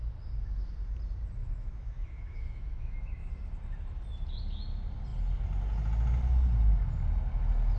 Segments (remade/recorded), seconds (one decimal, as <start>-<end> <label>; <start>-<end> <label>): 0.0-1.4 recorded; 1.4-3.3 remade; 3.3-7.8 recorded